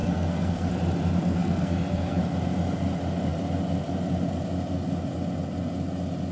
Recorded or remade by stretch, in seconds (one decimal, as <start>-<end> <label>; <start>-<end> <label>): 0.0-0.7 remade; 0.7-1.2 recorded; 1.2-2.2 remade; 2.2-6.3 recorded